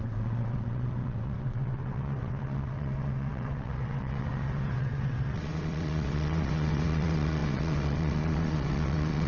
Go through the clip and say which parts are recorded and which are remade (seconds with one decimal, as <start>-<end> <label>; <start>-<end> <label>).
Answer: 0.0-9.3 remade